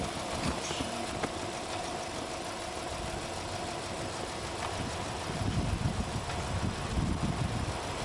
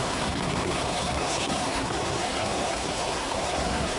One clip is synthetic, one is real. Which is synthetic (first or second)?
second